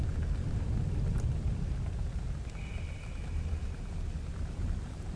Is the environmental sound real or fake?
real